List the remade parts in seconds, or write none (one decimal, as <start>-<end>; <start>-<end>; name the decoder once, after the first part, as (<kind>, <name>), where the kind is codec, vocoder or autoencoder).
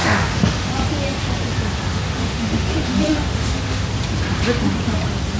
0.0-0.7 (autoencoder, DAC-VAE); 1.9-3.9